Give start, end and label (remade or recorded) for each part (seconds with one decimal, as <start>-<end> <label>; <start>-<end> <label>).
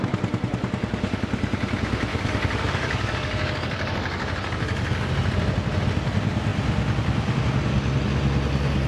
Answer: 0.0-2.1 recorded; 2.1-5.1 remade; 5.1-8.9 recorded